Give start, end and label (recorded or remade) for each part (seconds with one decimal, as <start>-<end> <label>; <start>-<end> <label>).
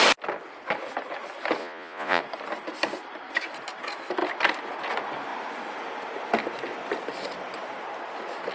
0.0-1.6 recorded; 1.6-2.2 remade; 2.2-8.5 recorded